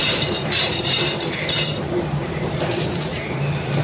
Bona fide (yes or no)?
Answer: no